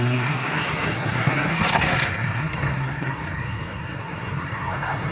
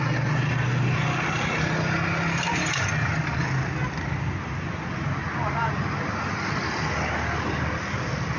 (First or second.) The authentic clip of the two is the second